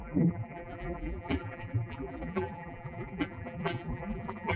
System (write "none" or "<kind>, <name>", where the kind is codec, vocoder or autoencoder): vocoder, BigVGAN v2